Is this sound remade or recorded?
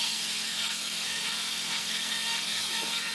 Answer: remade